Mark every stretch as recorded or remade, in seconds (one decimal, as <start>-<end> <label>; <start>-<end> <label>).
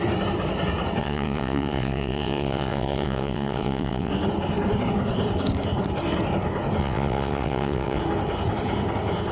0.0-1.0 recorded; 1.0-4.1 remade; 4.1-6.8 recorded; 6.8-8.0 remade; 8.0-9.3 recorded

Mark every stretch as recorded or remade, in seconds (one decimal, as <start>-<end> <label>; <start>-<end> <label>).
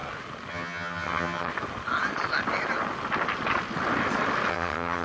0.0-0.5 recorded; 0.5-1.5 remade; 1.5-4.5 recorded; 4.5-5.0 remade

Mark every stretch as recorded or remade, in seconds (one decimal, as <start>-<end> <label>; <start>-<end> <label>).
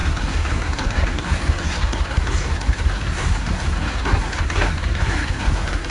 0.0-5.9 remade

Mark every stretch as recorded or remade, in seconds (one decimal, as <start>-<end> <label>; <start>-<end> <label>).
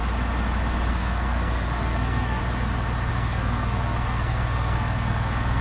0.0-0.9 recorded; 0.9-2.4 remade; 2.4-3.1 recorded; 3.1-5.6 remade